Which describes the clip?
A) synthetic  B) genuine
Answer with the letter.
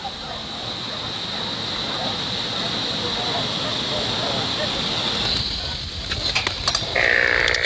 B